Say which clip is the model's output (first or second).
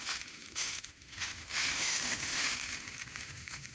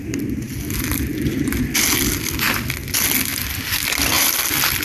first